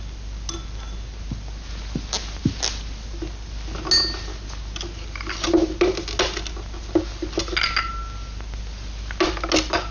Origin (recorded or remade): recorded